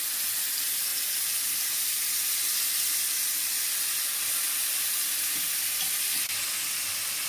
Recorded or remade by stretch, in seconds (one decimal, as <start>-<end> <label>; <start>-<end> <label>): 0.0-7.3 recorded